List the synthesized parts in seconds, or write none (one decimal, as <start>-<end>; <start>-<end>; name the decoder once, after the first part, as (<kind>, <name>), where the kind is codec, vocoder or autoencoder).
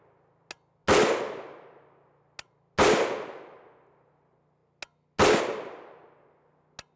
none